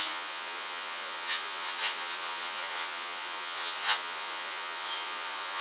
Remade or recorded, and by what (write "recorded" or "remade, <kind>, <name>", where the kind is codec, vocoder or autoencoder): remade, vocoder, Vocos